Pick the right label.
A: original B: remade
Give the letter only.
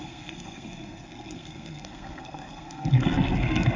B